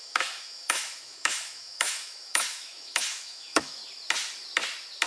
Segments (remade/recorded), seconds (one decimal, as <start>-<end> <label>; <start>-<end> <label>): 0.0-3.8 remade; 3.8-5.1 recorded